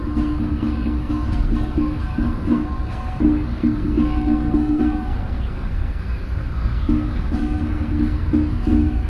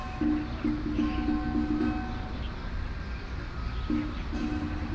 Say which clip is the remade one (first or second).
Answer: first